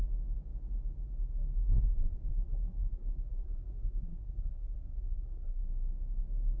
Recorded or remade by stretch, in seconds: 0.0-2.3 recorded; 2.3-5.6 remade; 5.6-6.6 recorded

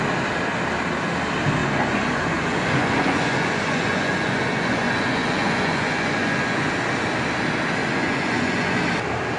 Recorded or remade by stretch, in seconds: 0.0-1.6 recorded; 1.6-6.7 remade; 6.7-7.8 recorded; 7.8-8.8 remade; 8.8-9.4 recorded

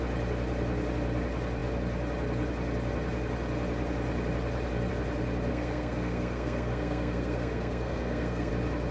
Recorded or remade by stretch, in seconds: 0.0-5.5 recorded; 5.5-8.5 remade; 8.5-8.9 recorded

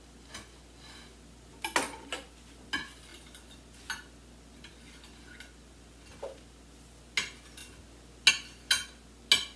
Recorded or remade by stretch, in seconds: 0.0-9.6 recorded

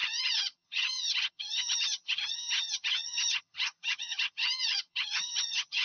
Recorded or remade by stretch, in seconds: 0.0-5.8 remade

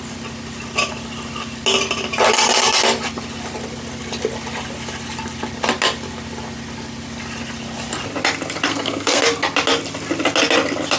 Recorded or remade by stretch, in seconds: 0.0-8.7 recorded; 8.7-9.2 remade; 9.2-11.0 recorded